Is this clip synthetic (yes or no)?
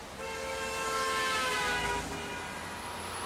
no